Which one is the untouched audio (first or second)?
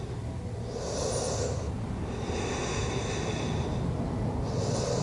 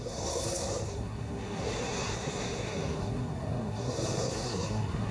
first